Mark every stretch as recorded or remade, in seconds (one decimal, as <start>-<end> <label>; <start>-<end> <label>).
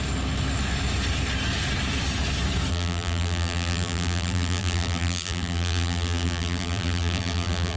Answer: 0.0-2.7 recorded; 2.7-7.8 remade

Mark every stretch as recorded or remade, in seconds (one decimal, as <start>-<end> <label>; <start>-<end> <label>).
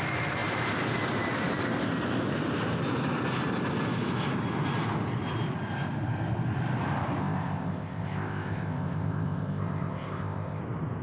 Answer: 0.0-7.2 recorded; 7.2-10.6 remade; 10.6-11.0 recorded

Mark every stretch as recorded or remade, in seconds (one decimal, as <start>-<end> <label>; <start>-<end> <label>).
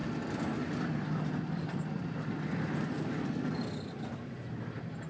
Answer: 0.0-5.1 recorded